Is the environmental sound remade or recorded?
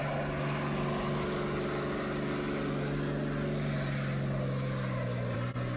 recorded